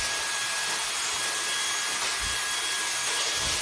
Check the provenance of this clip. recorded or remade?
recorded